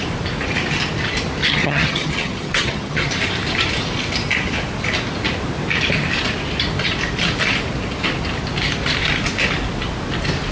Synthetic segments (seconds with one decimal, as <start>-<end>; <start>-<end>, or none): 1.4-3.1